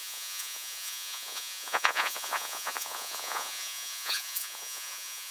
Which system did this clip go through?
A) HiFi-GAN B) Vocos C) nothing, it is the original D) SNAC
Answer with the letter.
B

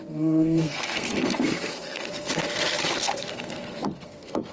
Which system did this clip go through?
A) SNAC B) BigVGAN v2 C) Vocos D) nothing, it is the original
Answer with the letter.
A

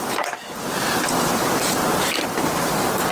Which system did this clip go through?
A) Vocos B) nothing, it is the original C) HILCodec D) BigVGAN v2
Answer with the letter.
D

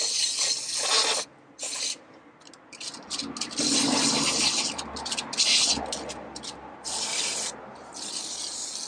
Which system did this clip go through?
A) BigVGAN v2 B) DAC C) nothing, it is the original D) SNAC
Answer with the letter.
C